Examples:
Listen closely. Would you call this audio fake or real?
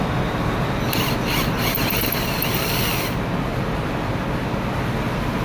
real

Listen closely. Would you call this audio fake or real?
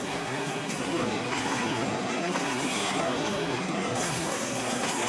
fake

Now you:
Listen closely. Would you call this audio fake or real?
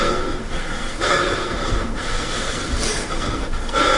fake